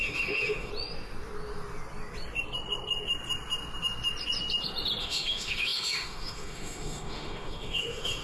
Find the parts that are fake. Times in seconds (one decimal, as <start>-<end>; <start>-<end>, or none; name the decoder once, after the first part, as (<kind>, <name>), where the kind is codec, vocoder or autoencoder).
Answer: 0.0-0.7 (autoencoder, DAC-VAE); 5.0-8.2